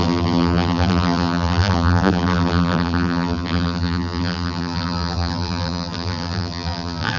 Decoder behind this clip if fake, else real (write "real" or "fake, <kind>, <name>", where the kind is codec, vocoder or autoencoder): fake, vocoder, BigVGAN v2